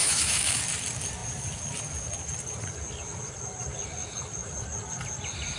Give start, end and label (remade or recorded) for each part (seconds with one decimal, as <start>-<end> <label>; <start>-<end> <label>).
0.0-0.6 remade; 0.6-5.6 recorded